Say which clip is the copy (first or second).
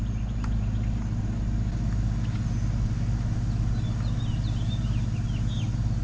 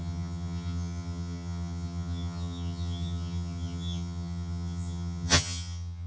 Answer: second